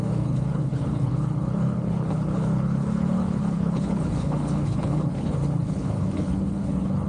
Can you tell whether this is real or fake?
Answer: fake